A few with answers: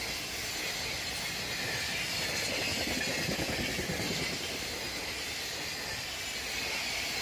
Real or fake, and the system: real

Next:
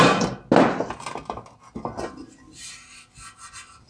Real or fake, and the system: real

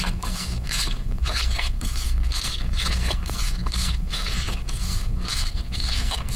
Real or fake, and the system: fake, codec, SNAC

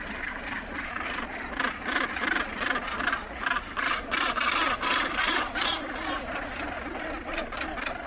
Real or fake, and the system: real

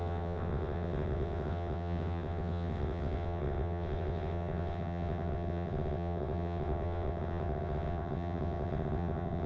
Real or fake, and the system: fake, vocoder, WaveNeXt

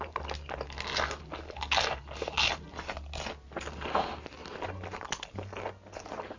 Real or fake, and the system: real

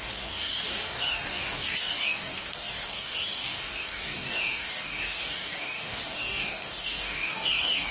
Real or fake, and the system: fake, codec, DAC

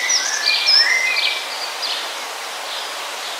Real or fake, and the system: real